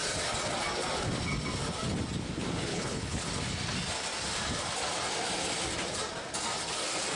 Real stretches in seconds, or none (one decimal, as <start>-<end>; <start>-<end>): 0.0-2.7; 3.3-7.2